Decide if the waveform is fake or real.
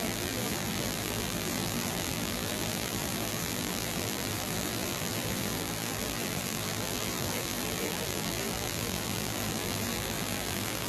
fake